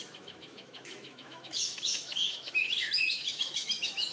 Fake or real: fake